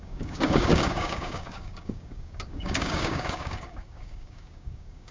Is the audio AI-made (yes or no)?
yes